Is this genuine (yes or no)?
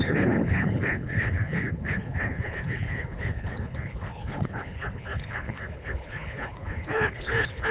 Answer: no